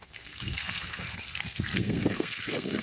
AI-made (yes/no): yes